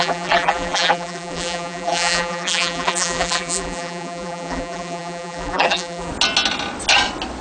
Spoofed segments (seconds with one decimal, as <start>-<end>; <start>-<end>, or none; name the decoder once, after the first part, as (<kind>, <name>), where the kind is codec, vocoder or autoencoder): 0.0-6.1 (vocoder, BigVGAN v2)